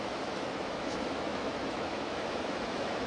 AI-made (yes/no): yes